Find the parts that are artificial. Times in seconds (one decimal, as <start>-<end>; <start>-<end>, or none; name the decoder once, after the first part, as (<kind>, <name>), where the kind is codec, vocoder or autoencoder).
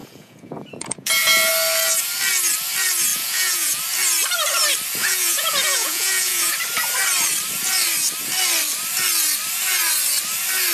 0.0-1.5 (vocoder, Vocos); 3.1-3.8; 5.0-6.5